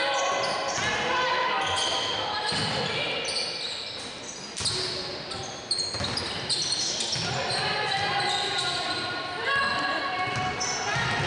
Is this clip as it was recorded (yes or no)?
yes